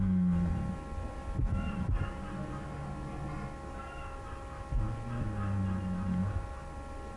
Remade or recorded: recorded